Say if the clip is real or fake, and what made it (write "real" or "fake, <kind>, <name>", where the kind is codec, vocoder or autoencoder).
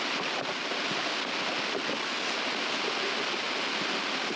real